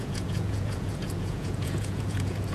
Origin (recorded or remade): remade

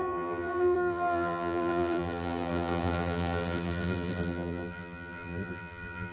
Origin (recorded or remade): remade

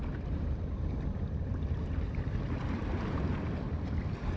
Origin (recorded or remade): remade